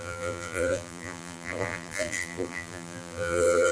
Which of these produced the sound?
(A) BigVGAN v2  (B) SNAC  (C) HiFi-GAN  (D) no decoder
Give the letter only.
A